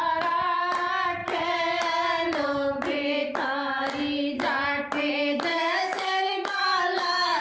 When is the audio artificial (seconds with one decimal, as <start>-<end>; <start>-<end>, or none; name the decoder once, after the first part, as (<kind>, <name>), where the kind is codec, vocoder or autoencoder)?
5.5-7.4 (autoencoder, DAC-VAE)